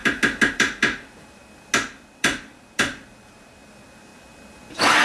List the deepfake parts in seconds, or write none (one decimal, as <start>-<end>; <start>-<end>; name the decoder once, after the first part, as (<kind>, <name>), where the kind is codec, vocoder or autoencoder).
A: 0.5-1.4 (vocoder, BigVGAN v2); 2.2-4.1